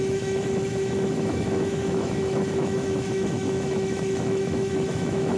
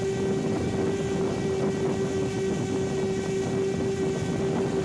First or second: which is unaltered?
second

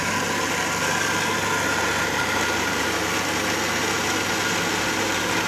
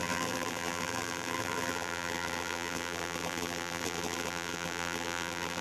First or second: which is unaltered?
first